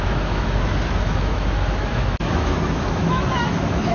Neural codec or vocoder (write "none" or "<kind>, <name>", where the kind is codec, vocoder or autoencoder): autoencoder, DAC-VAE